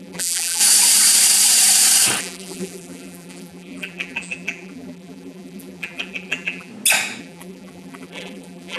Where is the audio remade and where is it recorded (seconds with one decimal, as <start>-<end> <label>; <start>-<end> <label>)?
0.0-0.6 remade; 0.6-2.2 recorded; 2.2-6.7 remade; 6.7-7.2 recorded; 7.2-8.8 remade

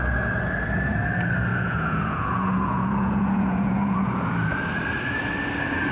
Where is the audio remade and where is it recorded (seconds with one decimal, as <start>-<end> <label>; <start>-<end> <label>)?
0.0-1.5 recorded; 1.5-4.3 remade; 4.3-5.9 recorded

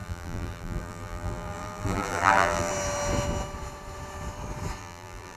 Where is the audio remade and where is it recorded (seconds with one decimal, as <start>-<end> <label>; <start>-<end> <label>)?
0.0-2.7 remade; 2.7-4.8 recorded; 4.8-5.4 remade

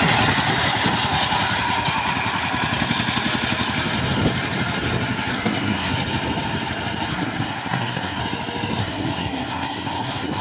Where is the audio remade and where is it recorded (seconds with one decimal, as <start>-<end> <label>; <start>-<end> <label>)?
0.0-5.3 recorded; 5.3-5.9 remade; 5.9-7.1 recorded; 7.1-8.2 remade; 8.2-8.8 recorded; 8.8-10.4 remade

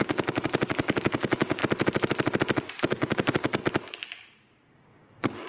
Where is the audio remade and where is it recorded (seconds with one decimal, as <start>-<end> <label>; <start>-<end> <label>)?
0.0-1.6 remade; 1.6-2.7 recorded; 2.7-3.6 remade; 3.6-4.7 recorded; 4.7-5.5 remade

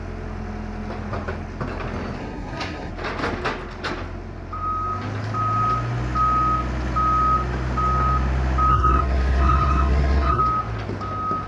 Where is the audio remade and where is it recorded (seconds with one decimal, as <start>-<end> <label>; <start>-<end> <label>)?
0.0-2.2 recorded; 2.2-2.9 remade; 2.9-8.7 recorded; 8.7-10.4 remade; 10.4-11.5 recorded